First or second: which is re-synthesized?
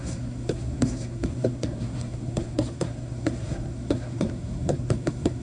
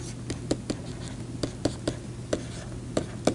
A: first